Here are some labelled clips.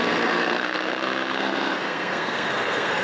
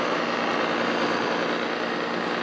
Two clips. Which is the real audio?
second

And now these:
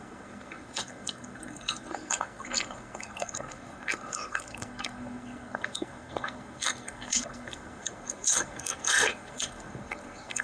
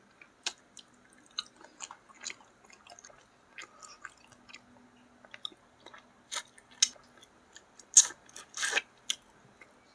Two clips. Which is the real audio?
second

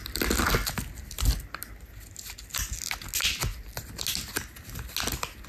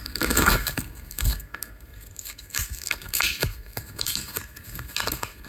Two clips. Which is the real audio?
first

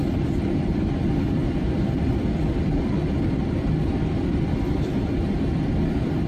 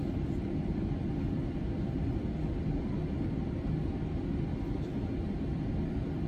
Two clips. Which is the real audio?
second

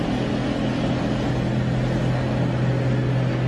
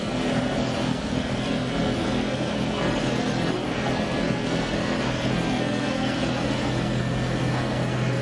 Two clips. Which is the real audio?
first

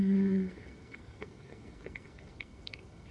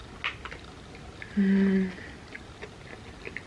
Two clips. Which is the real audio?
second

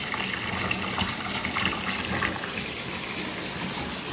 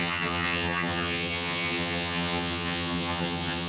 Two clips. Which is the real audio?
first